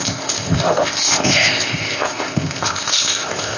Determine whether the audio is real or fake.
fake